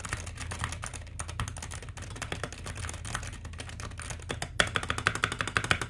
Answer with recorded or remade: recorded